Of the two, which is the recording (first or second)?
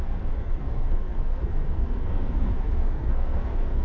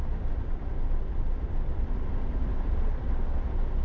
second